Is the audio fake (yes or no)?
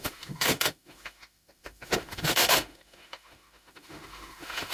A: yes